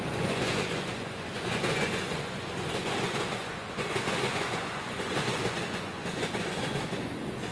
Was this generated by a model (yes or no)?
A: yes